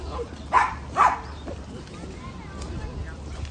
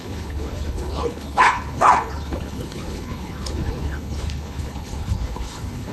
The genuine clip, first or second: first